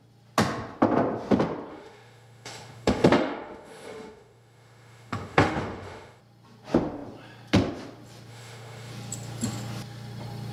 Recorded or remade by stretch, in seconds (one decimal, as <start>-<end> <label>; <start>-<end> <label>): 0.0-1.7 recorded; 1.7-6.2 remade; 6.2-8.3 recorded; 8.3-8.9 remade; 8.9-10.5 recorded